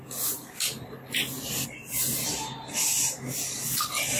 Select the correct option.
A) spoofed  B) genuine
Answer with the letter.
B